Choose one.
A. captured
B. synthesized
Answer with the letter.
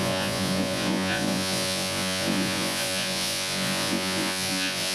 B